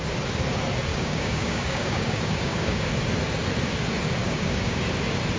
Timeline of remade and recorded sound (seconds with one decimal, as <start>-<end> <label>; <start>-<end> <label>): 0.0-0.9 recorded; 0.9-2.9 remade; 2.9-4.2 recorded; 4.2-4.8 remade; 4.8-5.4 recorded